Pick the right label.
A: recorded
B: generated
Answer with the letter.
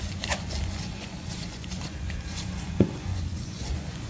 B